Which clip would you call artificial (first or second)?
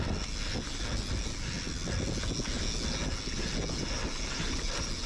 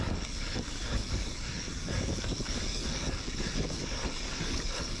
second